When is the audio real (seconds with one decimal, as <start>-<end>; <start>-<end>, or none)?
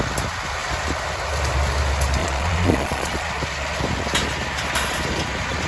0.0-2.2; 3.3-5.7